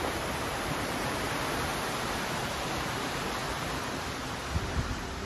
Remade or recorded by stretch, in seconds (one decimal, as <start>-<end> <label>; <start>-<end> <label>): 0.0-1.7 remade; 1.7-2.4 recorded; 2.4-3.4 remade; 3.4-4.7 recorded; 4.7-5.3 remade